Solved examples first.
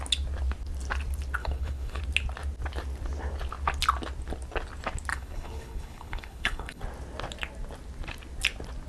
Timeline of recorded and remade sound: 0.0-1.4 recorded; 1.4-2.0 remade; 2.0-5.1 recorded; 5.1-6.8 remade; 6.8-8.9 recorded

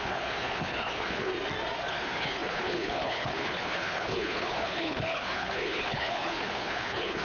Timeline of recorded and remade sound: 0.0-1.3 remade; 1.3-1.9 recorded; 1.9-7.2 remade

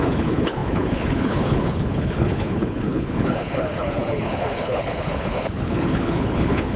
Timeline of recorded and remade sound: 0.0-6.8 remade

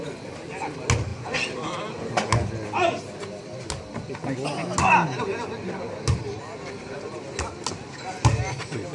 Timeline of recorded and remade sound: 0.0-8.9 recorded